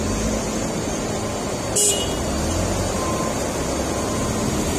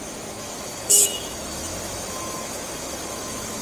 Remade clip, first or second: second